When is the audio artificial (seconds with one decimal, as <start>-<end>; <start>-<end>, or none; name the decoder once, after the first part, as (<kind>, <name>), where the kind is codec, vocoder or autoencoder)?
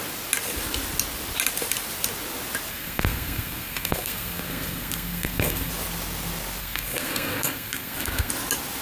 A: 2.7-5.7 (codec, SNAC); 6.6-8.3